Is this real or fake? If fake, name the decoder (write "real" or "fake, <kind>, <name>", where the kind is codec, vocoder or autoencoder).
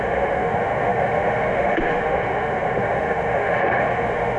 fake, autoencoder, DAC-VAE